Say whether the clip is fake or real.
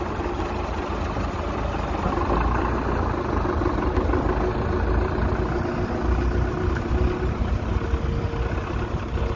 real